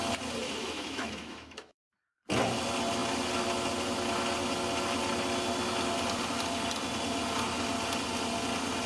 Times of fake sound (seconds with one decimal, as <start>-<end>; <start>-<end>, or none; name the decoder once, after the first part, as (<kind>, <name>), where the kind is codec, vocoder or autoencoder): 0.6-1.9 (autoencoder, DAC-VAE)